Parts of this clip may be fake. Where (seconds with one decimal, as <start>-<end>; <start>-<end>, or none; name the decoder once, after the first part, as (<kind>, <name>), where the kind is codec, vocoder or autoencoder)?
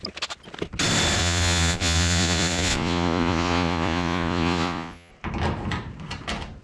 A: 1.2-5.1 (vocoder, Vocos)